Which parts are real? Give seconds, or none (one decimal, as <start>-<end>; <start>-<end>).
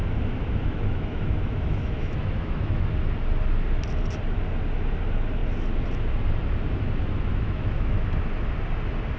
2.8-7.3; 8.1-9.2